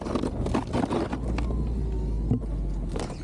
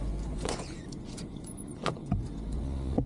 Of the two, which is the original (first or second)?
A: first